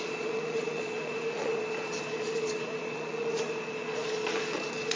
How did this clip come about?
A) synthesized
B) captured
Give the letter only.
A